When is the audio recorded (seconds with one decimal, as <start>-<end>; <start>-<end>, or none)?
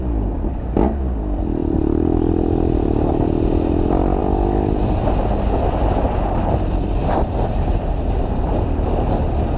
0.0-9.6